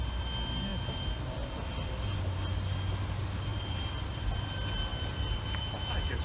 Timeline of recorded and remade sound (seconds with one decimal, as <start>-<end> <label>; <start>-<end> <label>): 0.0-3.5 recorded; 3.5-4.5 remade; 4.5-4.9 recorded; 4.9-6.2 remade